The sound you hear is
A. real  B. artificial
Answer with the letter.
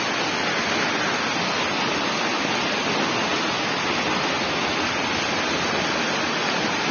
A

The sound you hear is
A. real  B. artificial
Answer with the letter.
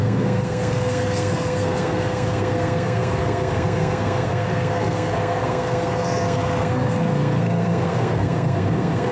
B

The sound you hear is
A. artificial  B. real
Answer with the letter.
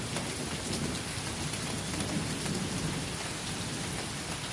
B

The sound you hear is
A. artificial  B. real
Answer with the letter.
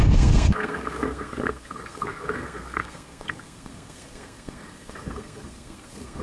A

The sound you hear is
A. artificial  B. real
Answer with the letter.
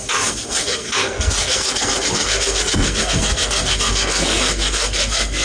A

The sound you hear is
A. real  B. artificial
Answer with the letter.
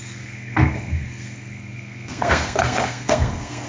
B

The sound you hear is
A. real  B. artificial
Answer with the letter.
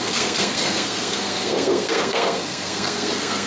B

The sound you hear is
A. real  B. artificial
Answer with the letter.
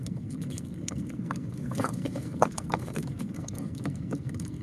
B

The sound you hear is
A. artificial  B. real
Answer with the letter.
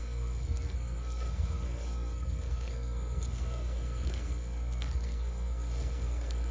A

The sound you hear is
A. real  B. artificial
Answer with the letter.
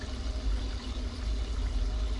A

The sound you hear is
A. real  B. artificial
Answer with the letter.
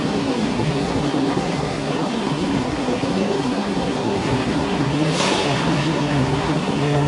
B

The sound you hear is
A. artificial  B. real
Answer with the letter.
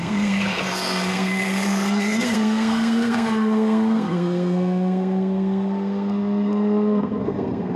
A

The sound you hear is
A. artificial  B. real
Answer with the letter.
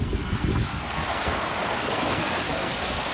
A